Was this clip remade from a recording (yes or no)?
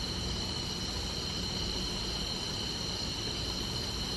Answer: no